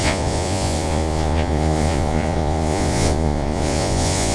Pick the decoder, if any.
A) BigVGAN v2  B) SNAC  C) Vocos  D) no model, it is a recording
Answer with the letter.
C